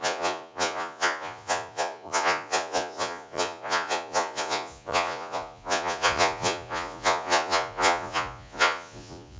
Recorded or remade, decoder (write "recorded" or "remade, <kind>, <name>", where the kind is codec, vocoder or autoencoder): remade, vocoder, Vocos